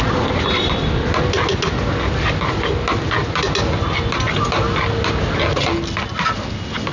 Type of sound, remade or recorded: recorded